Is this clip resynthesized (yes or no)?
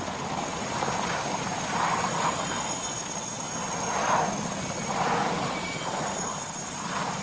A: no